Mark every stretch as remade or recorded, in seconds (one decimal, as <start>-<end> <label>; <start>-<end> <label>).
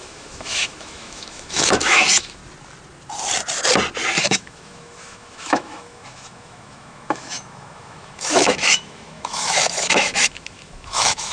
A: 0.0-2.4 remade; 2.4-4.2 recorded; 4.2-11.3 remade